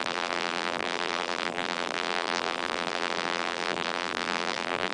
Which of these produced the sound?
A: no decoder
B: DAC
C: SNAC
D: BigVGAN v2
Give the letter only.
D